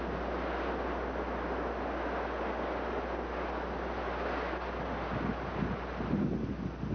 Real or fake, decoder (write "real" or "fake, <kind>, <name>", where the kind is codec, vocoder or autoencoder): real